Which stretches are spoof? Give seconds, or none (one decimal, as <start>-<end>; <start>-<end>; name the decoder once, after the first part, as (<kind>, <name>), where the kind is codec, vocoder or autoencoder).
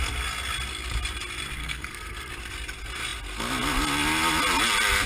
1.6-2.3 (codec, SNAC)